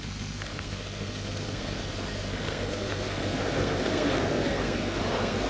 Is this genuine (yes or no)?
no